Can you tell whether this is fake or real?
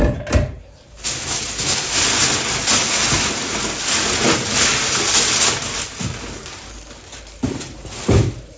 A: real